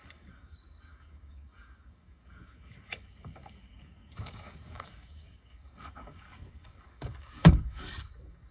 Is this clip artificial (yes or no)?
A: yes